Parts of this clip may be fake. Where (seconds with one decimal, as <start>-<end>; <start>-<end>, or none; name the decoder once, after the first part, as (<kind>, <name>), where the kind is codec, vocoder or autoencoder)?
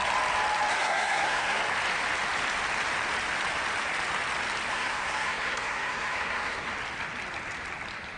0.7-1.6 (codec, SNAC); 4.7-6.7